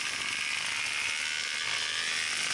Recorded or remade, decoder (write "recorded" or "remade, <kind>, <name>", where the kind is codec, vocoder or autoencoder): recorded